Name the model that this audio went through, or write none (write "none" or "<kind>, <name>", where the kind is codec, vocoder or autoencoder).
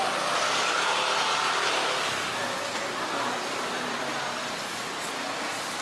none